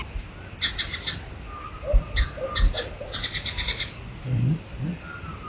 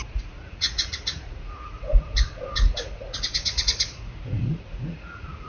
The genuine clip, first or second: first